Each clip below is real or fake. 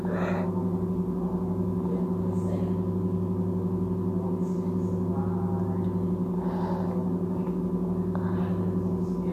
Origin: real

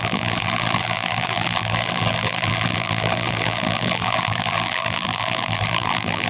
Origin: fake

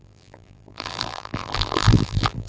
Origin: fake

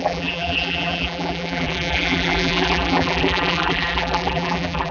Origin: fake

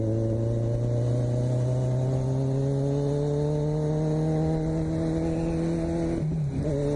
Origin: real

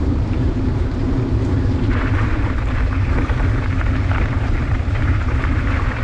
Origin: fake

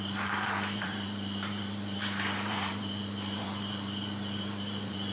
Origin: fake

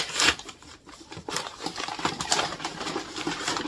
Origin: fake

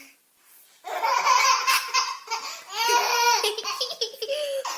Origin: real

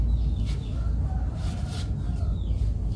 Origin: real